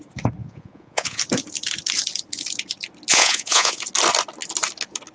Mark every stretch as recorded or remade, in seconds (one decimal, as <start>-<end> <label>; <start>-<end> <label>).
0.0-0.4 recorded; 0.4-1.2 remade; 1.2-3.1 recorded; 3.1-3.8 remade; 3.8-5.1 recorded